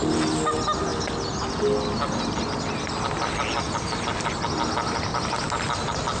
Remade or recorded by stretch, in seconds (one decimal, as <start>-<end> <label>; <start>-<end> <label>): 0.0-6.2 recorded